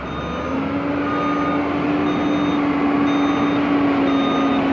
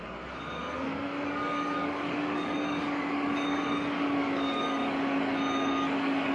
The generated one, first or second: second